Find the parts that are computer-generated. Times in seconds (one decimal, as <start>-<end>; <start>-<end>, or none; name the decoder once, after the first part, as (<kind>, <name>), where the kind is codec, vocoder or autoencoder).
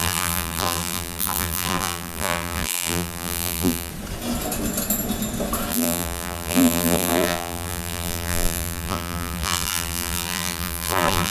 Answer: 0.0-3.9 (vocoder, BigVGAN v2); 5.7-11.3